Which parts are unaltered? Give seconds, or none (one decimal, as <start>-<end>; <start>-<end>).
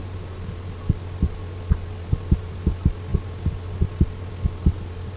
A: 0.0-5.2